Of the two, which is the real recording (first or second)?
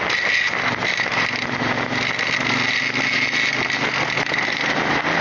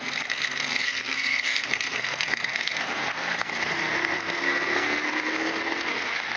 first